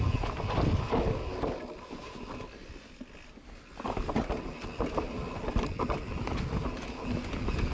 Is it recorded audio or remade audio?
recorded